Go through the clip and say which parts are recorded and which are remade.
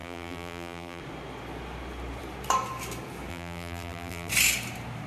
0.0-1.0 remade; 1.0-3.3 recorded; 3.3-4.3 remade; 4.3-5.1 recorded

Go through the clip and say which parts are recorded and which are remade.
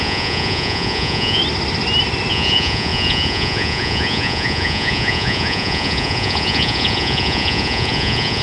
0.0-1.4 remade; 1.4-2.3 recorded; 2.3-8.4 remade